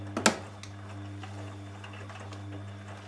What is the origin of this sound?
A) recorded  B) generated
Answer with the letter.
A